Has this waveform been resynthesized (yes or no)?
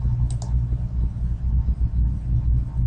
no